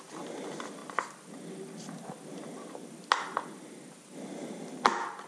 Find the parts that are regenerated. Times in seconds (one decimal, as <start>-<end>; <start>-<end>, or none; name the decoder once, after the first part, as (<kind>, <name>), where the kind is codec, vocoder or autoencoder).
none